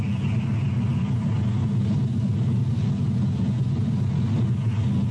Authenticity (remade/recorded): recorded